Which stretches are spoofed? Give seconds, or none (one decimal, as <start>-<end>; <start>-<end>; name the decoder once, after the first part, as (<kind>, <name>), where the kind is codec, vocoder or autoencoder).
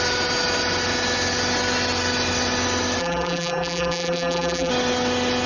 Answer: 3.0-4.7 (vocoder, BigVGAN v2)